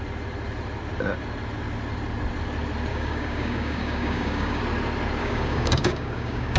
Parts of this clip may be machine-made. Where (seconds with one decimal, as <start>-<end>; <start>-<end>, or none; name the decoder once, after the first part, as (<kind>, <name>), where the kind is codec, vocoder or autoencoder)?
2.9-4.6 (codec, DAC); 5.2-6.6